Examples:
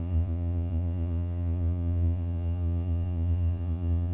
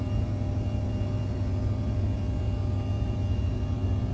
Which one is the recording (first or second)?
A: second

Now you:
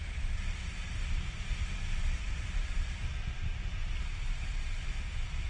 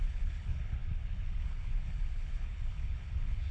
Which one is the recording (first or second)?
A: first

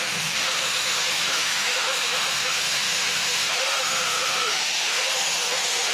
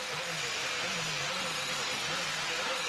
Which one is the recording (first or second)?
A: second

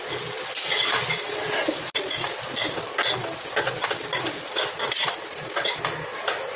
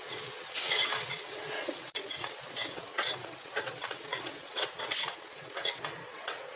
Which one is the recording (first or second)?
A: first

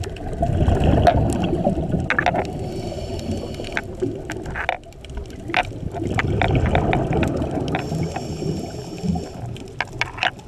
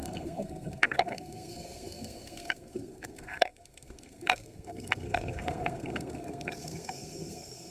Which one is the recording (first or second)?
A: first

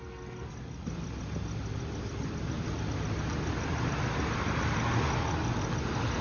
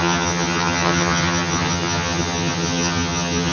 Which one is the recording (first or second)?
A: first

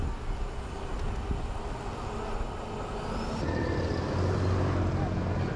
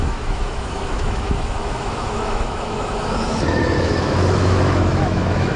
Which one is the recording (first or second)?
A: first